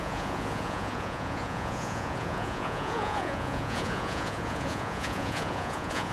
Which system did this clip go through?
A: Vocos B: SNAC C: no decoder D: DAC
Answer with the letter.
A